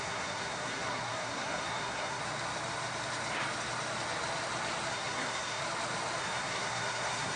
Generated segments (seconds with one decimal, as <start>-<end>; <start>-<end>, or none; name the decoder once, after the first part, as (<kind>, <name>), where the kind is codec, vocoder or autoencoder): 0.0-2.2 (codec, SNAC); 4.9-5.6; 6.2-7.4